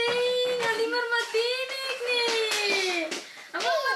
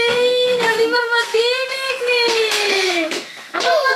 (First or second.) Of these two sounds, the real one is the first